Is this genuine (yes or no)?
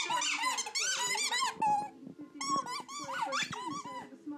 yes